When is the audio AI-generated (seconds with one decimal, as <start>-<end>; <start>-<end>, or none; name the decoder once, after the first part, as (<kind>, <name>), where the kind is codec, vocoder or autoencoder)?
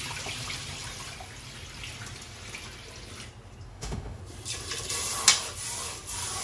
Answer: 3.7-4.2 (autoencoder, DAC-VAE)